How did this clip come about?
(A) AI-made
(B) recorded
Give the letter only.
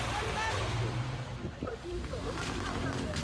B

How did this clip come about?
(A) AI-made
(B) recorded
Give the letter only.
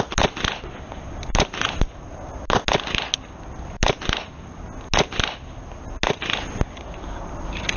B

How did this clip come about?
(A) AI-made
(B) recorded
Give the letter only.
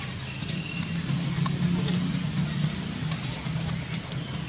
B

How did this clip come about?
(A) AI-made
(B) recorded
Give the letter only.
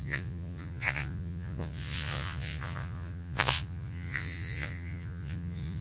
A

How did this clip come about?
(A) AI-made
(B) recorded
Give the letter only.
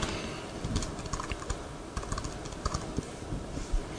B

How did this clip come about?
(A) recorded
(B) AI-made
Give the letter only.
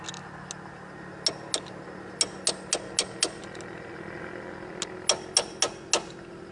A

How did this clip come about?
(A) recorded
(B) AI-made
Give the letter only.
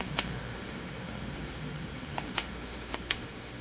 B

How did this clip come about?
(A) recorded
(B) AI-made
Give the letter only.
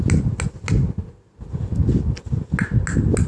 A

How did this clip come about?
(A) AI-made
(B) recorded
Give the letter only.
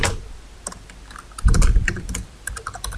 A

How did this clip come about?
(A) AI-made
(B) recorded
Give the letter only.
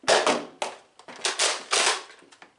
B